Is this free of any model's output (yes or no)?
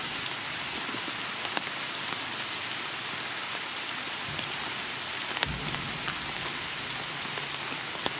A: yes